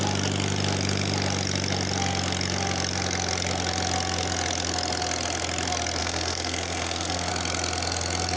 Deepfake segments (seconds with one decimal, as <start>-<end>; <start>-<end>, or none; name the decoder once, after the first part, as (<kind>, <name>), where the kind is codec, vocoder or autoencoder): 6.0-7.3 (codec, SNAC)